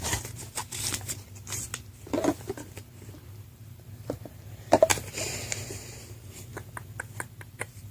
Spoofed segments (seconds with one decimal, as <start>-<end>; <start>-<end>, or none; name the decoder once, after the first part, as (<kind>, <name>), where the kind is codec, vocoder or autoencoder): 0.0-0.6 (vocoder, BigVGAN v2); 3.3-4.9; 5.4-6.5; 7.1-7.9